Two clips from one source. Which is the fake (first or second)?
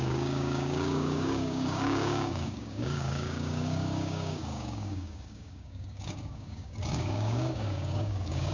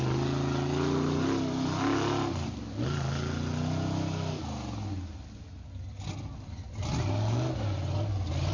first